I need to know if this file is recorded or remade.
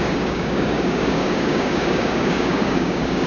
remade